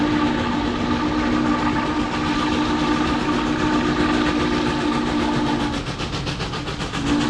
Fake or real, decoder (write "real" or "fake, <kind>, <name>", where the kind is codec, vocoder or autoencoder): real